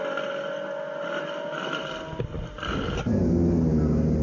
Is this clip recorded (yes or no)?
yes